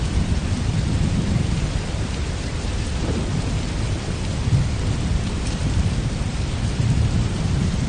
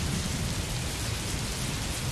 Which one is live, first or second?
second